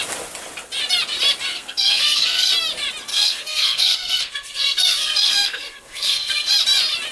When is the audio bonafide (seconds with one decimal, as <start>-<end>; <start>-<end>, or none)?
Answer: 0.0-1.5; 2.5-3.1; 6.5-7.1